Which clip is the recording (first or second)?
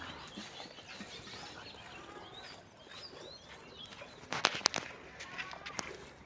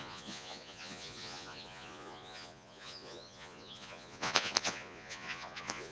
first